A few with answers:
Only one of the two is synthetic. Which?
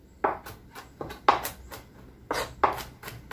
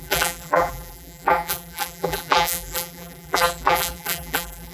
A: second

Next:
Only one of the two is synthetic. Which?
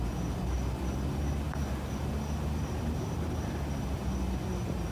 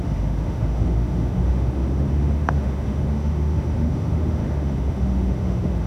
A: second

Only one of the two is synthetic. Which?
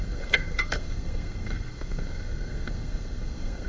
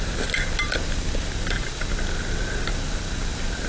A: first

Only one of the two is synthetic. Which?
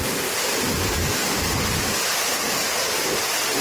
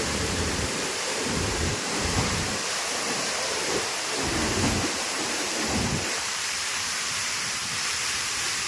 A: second